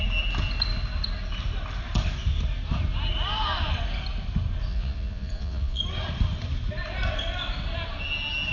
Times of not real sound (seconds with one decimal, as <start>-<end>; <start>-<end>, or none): 4.7-5.8